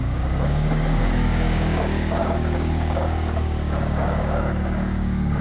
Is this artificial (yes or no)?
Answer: yes